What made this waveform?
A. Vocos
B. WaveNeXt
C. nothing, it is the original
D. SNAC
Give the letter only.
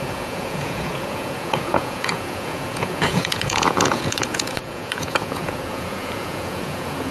A